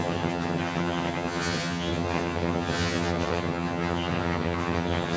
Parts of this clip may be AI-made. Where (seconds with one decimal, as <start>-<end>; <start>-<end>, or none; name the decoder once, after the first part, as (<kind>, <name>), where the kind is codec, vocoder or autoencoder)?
0.0-5.2 (vocoder, HiFi-GAN)

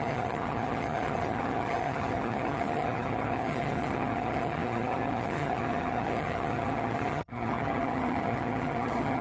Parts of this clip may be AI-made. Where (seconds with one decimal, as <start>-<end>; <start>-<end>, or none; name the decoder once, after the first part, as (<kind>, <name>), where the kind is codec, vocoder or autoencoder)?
0.0-9.2 (vocoder, HiFi-GAN)